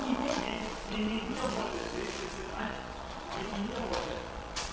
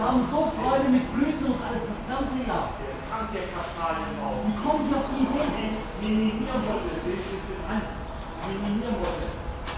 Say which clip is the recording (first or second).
second